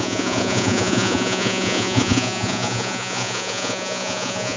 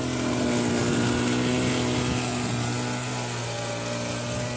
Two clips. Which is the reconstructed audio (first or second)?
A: first